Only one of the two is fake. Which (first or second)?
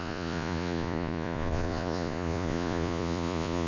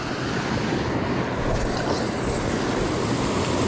first